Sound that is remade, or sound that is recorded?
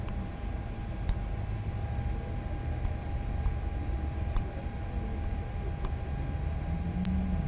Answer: recorded